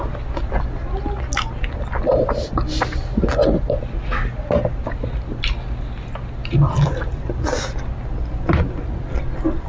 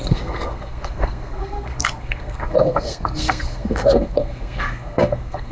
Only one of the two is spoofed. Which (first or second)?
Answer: second